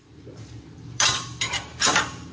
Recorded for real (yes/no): no